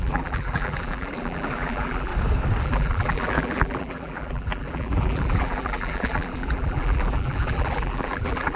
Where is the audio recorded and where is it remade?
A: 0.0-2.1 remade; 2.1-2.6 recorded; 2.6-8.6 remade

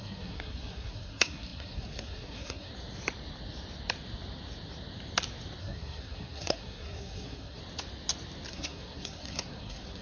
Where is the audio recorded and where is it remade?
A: 0.0-2.7 remade; 2.7-5.6 recorded; 5.6-7.6 remade; 7.6-8.5 recorded; 8.5-10.0 remade

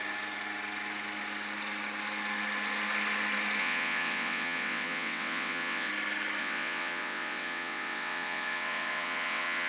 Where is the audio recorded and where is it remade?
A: 0.0-3.6 recorded; 3.6-5.9 remade; 5.9-6.4 recorded; 6.4-9.7 remade

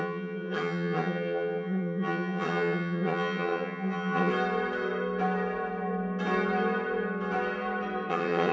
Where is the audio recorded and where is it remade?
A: 0.0-4.3 remade; 4.3-8.1 recorded; 8.1-8.5 remade

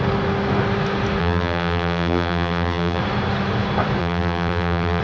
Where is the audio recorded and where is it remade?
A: 0.0-1.2 recorded; 1.2-3.0 remade; 3.0-4.0 recorded; 4.0-5.0 remade

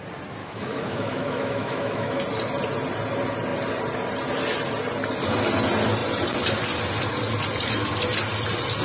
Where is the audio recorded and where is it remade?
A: 0.0-0.4 recorded; 0.4-2.2 remade; 2.2-8.8 recorded

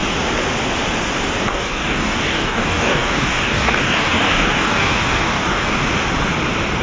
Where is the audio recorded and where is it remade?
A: 0.0-1.4 recorded; 1.4-5.8 remade; 5.8-6.8 recorded